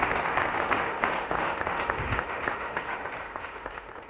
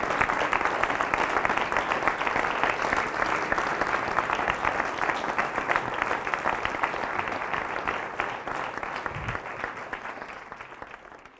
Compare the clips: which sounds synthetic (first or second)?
first